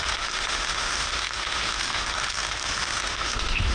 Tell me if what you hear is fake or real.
fake